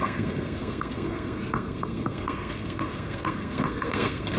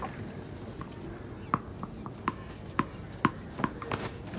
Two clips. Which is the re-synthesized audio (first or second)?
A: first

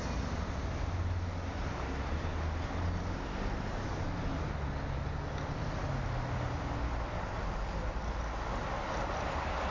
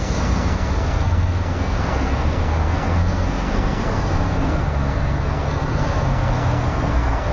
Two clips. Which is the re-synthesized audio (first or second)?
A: second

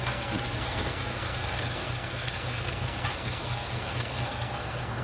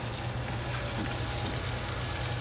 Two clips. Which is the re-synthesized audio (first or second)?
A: first